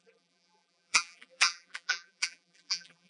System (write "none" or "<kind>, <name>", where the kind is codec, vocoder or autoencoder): vocoder, BigVGAN v2